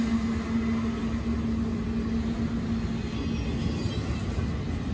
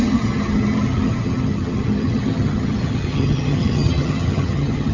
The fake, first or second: second